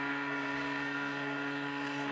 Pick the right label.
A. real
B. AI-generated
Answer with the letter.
B